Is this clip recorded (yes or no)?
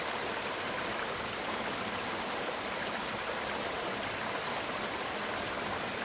yes